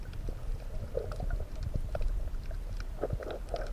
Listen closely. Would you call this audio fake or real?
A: real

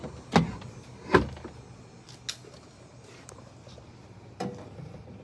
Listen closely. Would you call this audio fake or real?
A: real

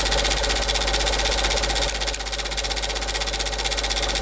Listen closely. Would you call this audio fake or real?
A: real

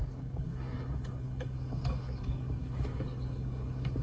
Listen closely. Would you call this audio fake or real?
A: fake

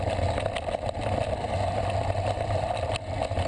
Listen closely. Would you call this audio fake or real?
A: real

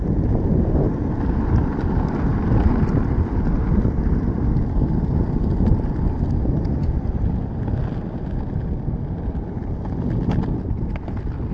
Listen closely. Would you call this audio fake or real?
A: real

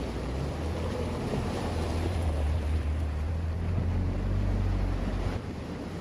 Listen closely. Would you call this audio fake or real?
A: fake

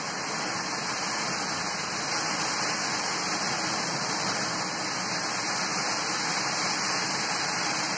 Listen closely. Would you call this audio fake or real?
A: real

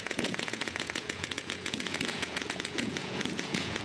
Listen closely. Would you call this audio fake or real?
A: fake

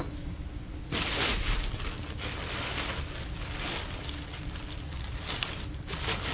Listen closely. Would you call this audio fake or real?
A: real